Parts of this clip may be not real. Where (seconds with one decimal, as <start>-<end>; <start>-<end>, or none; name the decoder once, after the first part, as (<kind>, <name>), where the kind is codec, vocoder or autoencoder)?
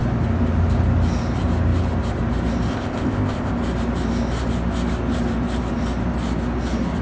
2.7-3.5 (codec, ZipCodec)